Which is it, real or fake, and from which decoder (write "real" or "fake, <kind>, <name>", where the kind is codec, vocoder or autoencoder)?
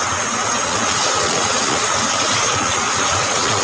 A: fake, vocoder, Vocos